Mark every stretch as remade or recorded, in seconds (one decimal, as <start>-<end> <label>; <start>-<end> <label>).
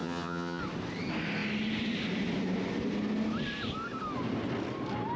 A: 0.0-0.6 remade; 0.6-5.2 recorded